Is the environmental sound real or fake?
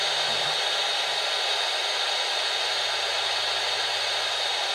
real